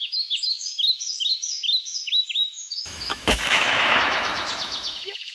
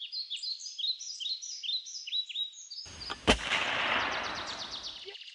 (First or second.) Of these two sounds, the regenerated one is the first